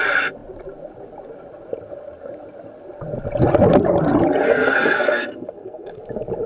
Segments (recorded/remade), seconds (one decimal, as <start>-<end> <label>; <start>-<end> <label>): 0.0-4.5 recorded; 4.5-6.0 remade; 6.0-6.5 recorded